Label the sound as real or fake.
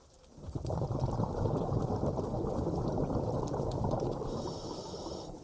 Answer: fake